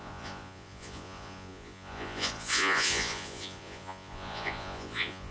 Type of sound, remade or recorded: remade